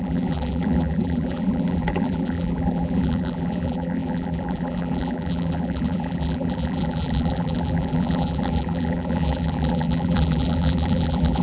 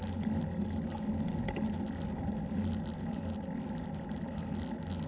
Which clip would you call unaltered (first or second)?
second